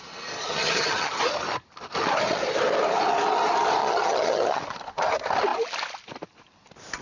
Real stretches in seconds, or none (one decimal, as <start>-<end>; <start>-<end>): 0.0-0.4; 1.2-3.8; 4.6-7.0